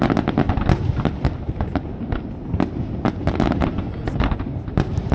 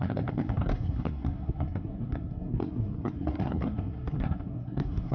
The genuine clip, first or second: first